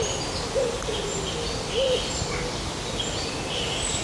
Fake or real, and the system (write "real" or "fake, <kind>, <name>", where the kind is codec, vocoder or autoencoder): real